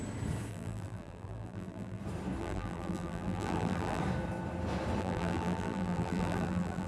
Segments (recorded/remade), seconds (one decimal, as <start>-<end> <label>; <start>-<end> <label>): 0.0-0.5 recorded; 0.5-2.0 remade; 2.0-2.4 recorded; 2.4-4.0 remade; 4.0-5.0 recorded; 5.0-6.9 remade